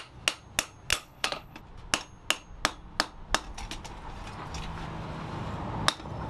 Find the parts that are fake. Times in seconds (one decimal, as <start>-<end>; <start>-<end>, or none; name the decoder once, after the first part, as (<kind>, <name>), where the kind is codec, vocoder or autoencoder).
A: 0.9-1.6 (codec, HILCodec)